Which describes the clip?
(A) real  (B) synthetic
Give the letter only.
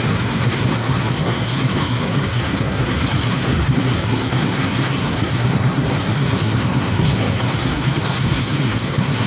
B